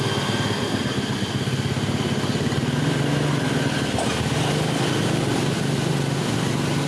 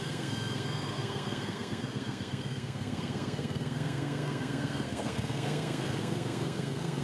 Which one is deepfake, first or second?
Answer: second